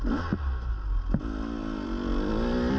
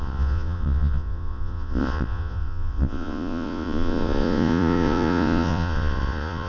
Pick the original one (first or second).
first